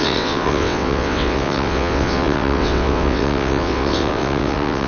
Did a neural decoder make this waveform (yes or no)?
yes